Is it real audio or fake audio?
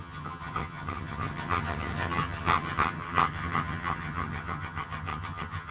fake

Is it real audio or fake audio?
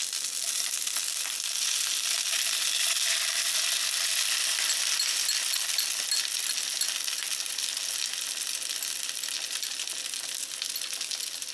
real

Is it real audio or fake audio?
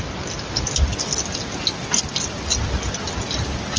real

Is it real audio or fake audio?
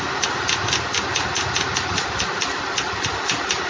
real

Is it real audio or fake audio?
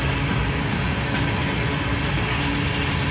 real